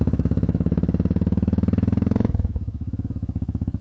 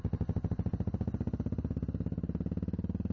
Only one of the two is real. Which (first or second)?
second